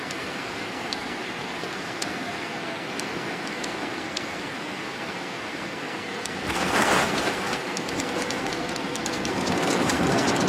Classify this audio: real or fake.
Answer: fake